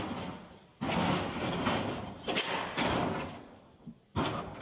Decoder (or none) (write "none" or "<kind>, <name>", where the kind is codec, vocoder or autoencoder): none